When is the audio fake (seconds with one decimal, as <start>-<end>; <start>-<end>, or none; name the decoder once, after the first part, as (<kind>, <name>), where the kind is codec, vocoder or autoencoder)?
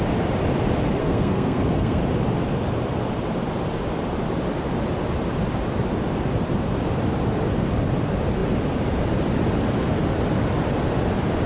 1.0-2.0 (codec, SNAC)